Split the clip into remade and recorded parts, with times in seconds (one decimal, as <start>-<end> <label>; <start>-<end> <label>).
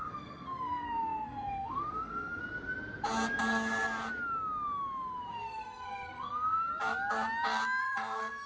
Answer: 0.0-2.4 remade; 2.4-5.3 recorded; 5.3-6.7 remade; 6.7-7.8 recorded; 7.8-8.5 remade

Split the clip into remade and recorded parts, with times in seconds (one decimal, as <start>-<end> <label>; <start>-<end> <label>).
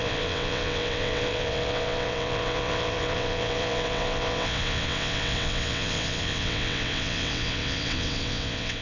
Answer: 0.0-8.8 remade